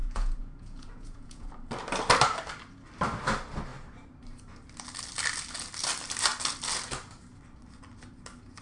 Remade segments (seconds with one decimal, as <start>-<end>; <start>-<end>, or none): 0.0-1.5